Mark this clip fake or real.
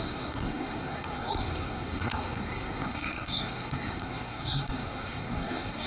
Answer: fake